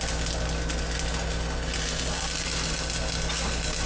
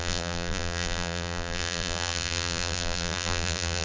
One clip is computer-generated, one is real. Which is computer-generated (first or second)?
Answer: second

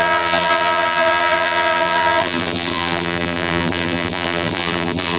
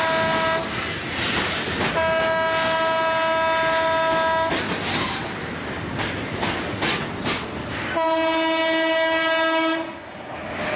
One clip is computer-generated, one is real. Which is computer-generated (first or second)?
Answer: first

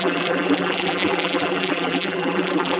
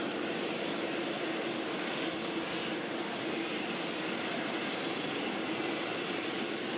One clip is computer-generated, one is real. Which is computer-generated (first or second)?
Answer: first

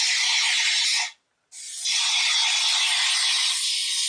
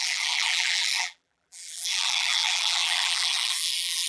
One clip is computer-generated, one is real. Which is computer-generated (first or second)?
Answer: second